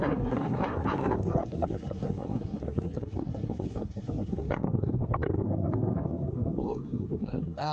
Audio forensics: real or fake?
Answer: fake